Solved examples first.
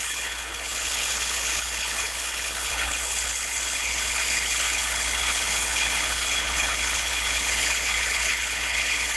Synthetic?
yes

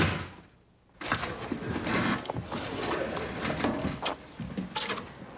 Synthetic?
no